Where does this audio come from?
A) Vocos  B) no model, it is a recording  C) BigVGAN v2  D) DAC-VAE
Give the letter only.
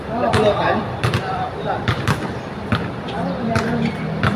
B